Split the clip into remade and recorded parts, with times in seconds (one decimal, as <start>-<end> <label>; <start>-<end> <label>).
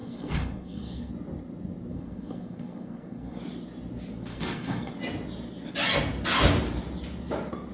0.0-1.1 remade; 1.1-1.9 recorded; 1.9-3.4 remade; 3.4-4.3 recorded; 4.3-4.9 remade; 4.9-7.7 recorded